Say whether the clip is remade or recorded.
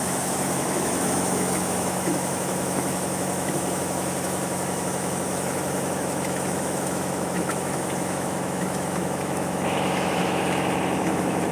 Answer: remade